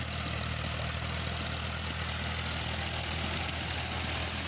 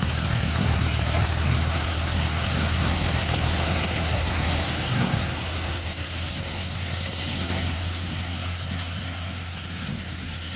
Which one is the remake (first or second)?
second